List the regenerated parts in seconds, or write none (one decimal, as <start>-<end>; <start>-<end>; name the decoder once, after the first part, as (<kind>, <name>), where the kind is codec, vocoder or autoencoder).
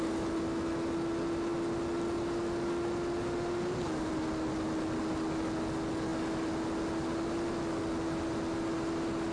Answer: none